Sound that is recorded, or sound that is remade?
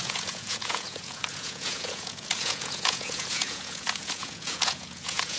remade